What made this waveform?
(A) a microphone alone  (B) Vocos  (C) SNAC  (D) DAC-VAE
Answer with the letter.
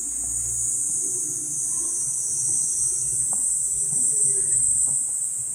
A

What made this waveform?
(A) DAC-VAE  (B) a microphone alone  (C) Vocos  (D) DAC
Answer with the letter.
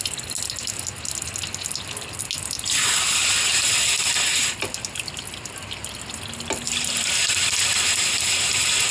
B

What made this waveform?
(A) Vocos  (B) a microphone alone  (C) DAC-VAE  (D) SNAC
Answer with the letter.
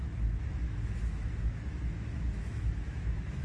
C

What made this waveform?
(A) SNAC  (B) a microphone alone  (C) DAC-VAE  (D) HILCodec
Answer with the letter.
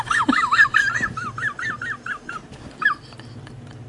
B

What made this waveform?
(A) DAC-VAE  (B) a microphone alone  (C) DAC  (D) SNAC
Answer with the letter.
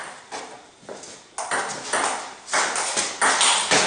B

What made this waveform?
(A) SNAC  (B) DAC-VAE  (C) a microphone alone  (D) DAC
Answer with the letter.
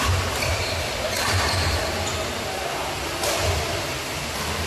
C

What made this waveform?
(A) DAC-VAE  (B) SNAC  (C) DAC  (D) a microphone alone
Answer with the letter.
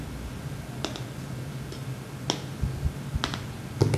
D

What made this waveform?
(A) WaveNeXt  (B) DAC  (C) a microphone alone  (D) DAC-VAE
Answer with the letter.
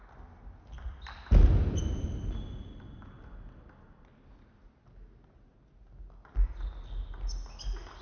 C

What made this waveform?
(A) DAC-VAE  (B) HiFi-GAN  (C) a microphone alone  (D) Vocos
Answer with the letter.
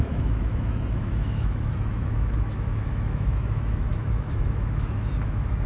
A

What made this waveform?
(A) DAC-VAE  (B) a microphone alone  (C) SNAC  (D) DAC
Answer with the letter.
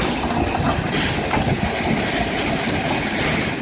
B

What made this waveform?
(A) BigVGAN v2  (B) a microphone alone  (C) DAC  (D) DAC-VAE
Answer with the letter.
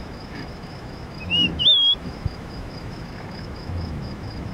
D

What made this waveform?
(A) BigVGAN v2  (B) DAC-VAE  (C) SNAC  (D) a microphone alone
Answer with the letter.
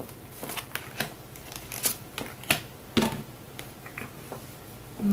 D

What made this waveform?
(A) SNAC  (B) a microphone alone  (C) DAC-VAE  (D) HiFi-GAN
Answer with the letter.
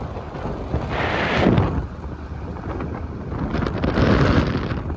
B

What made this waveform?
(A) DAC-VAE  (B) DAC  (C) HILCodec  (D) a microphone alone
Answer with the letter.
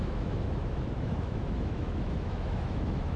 A